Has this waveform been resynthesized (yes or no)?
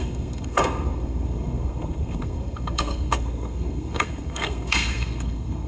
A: yes